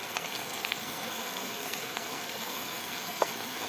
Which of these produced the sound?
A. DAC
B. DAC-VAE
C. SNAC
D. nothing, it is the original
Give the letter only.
C